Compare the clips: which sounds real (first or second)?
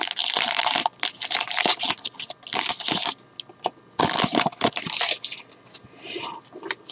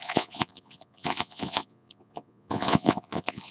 first